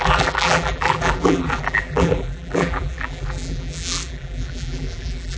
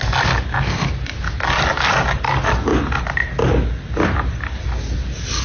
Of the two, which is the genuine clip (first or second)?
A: second